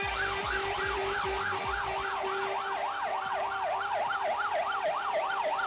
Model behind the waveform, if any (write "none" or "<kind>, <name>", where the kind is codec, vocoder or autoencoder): none